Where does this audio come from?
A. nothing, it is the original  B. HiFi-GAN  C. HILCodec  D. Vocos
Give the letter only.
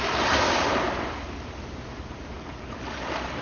A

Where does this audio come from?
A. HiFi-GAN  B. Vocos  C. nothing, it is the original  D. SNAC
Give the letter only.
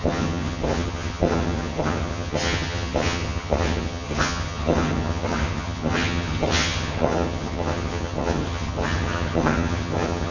A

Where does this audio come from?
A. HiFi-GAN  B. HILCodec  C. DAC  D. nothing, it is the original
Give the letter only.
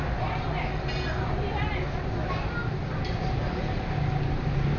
D